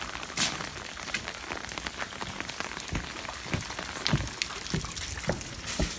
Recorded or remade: recorded